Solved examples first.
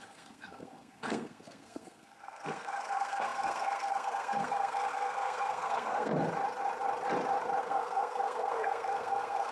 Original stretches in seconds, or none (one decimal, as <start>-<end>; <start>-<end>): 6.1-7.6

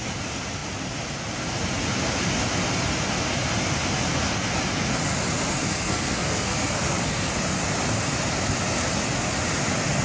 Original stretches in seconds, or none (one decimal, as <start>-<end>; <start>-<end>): 0.0-5.6; 7.3-10.0

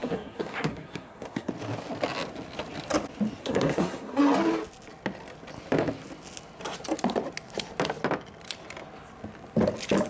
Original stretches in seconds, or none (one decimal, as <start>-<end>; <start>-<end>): 1.5-3.4; 4.2-10.1

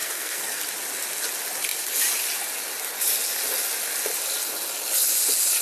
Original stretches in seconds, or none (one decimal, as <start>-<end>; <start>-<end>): 0.6-5.6

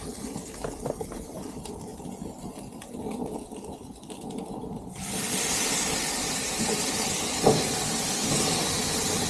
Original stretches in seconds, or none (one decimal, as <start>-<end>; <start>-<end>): 0.0-9.3

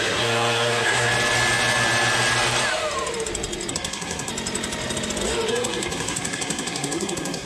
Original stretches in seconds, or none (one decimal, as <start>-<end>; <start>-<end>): 1.1-3.7; 4.3-5.5